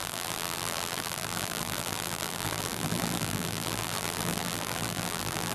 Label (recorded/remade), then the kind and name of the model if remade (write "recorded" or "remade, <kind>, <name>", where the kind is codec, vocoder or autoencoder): remade, vocoder, BigVGAN v2